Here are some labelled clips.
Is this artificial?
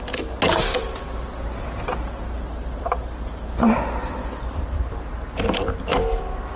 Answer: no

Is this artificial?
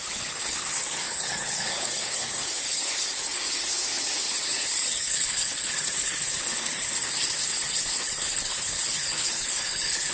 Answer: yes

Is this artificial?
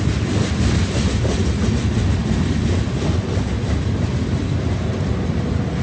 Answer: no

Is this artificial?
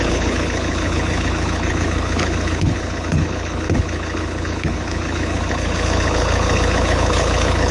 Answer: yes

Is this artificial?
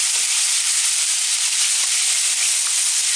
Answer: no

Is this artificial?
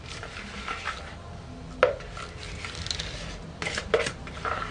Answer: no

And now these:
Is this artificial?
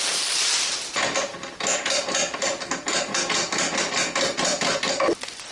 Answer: no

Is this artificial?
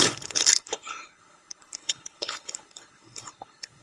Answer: yes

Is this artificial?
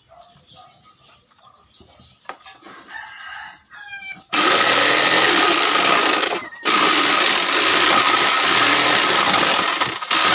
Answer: no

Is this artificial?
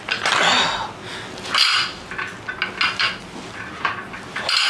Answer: no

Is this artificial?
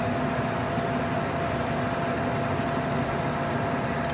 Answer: no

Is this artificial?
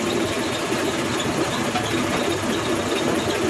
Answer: no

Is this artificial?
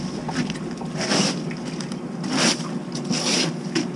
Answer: no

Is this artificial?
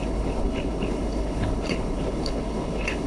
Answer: yes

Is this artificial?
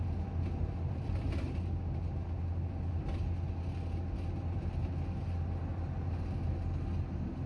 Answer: no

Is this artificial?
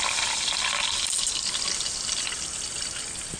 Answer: no